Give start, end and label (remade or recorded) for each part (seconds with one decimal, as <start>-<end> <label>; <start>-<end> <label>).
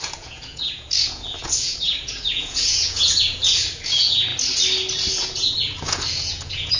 0.0-4.3 remade; 4.3-5.1 recorded; 5.1-6.8 remade